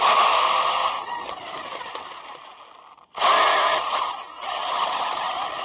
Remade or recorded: recorded